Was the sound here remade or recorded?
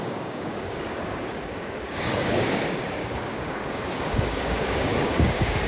remade